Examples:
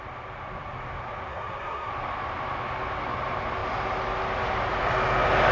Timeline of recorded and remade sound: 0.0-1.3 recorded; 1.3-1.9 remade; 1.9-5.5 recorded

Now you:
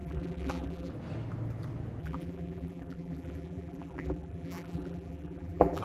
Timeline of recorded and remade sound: 0.0-0.9 remade; 0.9-2.0 recorded; 2.0-5.8 remade

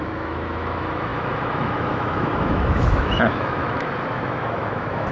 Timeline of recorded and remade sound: 0.0-5.1 remade

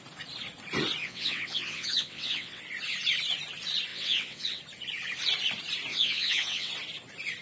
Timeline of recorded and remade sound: 0.0-1.0 recorded; 1.0-2.6 remade; 2.6-3.9 recorded; 3.9-4.6 remade; 4.6-5.9 recorded; 5.9-6.7 remade; 6.7-7.4 recorded

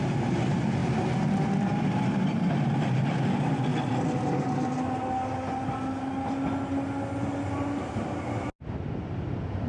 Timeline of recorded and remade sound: 0.0-9.7 recorded

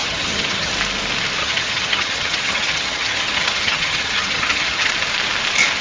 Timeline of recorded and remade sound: 0.0-0.7 remade; 0.7-1.4 recorded; 1.4-4.9 remade; 4.9-5.8 recorded

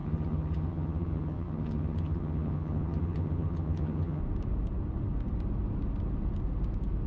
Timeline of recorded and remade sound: 0.0-4.2 remade; 4.2-7.1 recorded

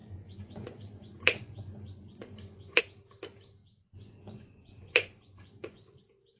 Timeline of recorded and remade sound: 0.0-2.8 remade; 2.8-3.6 recorded; 3.6-6.0 remade; 6.0-6.4 recorded